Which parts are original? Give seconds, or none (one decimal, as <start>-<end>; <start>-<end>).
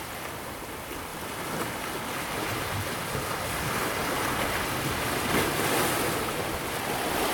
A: 0.0-7.3